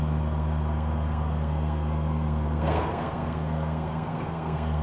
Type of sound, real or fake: fake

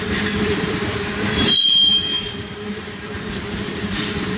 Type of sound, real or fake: fake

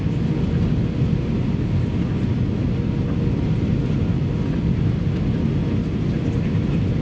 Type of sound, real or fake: real